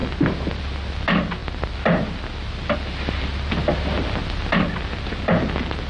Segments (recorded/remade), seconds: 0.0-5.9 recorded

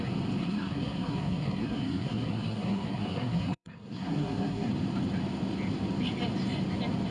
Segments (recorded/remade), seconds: 0.0-0.4 recorded; 0.4-4.7 remade; 4.7-7.1 recorded

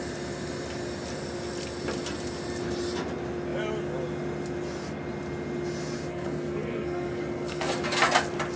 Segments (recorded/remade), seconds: 0.0-6.1 recorded; 6.1-7.7 remade; 7.7-8.6 recorded

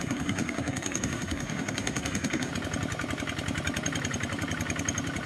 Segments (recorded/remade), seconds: 0.0-2.5 remade; 2.5-5.3 recorded

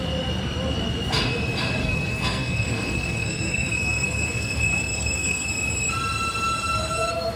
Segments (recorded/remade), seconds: 0.0-1.8 recorded; 1.8-5.5 remade; 5.5-7.4 recorded

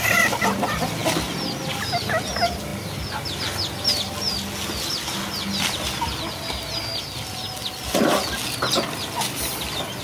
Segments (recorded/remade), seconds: 0.0-10.0 recorded

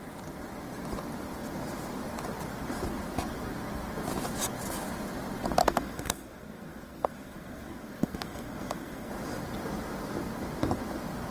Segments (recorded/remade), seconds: 0.0-5.6 recorded; 5.6-9.1 remade; 9.1-11.3 recorded